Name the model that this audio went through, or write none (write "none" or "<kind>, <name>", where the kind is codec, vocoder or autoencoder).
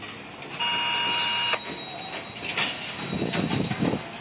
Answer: none